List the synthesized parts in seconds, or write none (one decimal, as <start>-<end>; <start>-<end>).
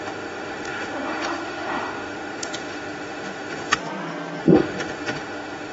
0.0-3.8; 4.4-5.7